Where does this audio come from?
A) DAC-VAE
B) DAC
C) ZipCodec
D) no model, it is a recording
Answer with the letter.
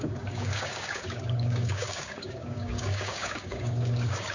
B